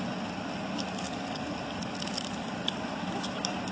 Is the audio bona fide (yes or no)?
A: yes